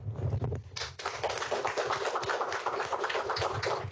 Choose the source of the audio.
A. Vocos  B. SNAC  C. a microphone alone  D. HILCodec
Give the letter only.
C